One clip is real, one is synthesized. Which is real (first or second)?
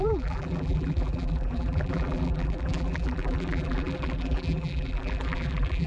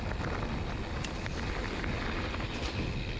second